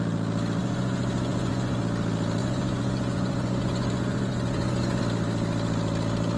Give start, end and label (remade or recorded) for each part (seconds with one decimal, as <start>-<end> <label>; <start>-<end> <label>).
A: 0.0-0.6 recorded; 0.6-1.8 remade; 1.8-2.4 recorded; 2.4-5.0 remade; 5.0-6.4 recorded